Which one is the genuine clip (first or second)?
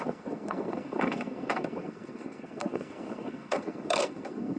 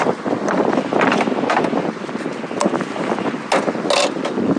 second